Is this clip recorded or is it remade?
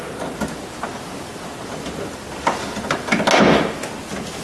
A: recorded